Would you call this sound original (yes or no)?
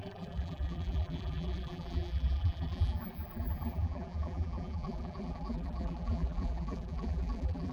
no